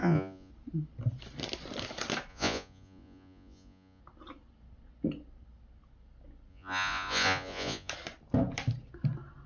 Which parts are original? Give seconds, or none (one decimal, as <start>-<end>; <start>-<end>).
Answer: 0.5-2.3; 4.0-6.5; 7.9-9.5

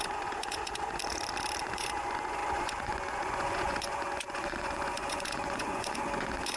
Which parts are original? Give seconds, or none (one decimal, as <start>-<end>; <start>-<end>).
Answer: 1.0-1.7

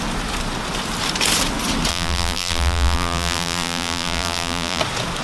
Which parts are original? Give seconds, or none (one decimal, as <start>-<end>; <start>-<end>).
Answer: 0.0-1.9; 4.8-5.2

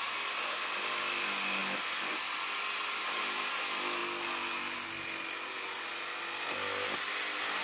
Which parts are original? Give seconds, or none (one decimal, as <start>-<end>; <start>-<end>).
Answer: 0.0-7.6